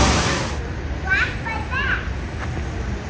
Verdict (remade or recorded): recorded